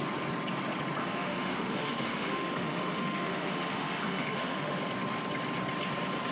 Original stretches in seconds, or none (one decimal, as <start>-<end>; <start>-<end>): 0.0-1.0; 4.8-6.3